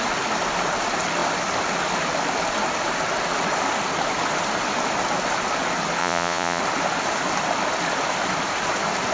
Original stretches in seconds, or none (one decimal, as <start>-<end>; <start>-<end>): 0.0-6.0; 6.6-9.1